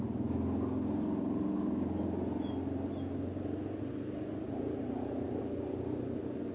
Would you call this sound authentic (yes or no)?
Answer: yes